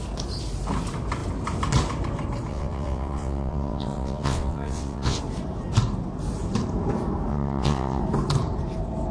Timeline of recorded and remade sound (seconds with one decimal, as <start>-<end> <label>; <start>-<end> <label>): 0.0-2.5 recorded; 2.5-5.2 remade; 5.2-7.3 recorded; 7.3-8.0 remade; 8.0-9.1 recorded